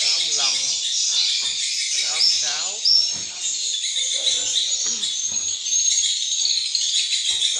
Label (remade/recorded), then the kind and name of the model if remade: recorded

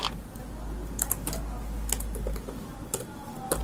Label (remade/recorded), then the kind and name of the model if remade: recorded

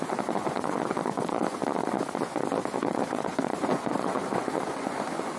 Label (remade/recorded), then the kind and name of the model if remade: remade, vocoder, Vocos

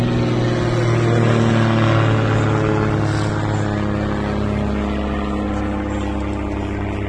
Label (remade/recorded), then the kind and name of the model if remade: recorded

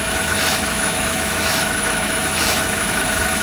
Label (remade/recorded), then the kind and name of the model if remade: remade, autoencoder, DAC-VAE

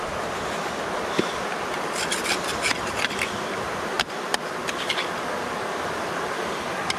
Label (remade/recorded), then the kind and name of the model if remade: recorded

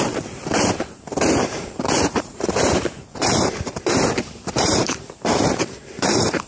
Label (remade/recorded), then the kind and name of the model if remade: remade, vocoder, BigVGAN v2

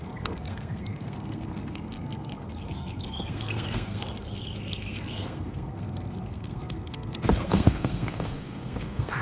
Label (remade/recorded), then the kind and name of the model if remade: remade, codec, SNAC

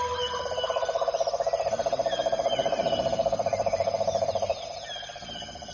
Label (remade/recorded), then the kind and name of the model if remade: recorded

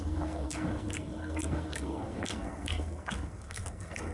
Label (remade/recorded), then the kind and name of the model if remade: remade, codec, SNAC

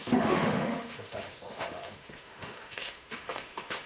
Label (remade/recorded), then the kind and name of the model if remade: remade, autoencoder, DAC-VAE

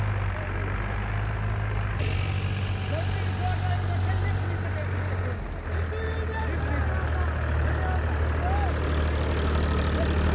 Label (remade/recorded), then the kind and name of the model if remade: recorded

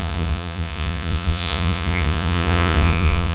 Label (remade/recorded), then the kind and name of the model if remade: remade, vocoder, Vocos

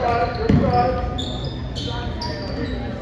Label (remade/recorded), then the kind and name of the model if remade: recorded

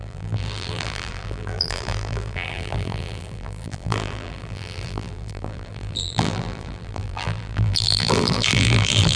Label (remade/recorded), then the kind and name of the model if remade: remade, vocoder, BigVGAN v2